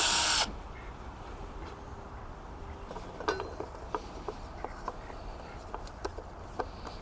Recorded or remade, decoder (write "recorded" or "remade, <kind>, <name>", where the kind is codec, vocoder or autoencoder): recorded